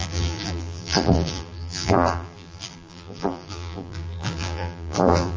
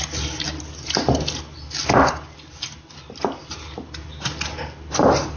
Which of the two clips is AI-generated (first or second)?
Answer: first